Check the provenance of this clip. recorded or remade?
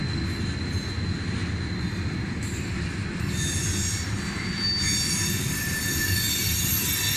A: recorded